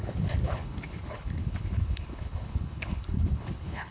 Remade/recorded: remade